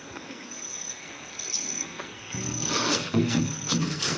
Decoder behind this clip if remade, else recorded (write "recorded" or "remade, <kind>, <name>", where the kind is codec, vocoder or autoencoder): remade, codec, SNAC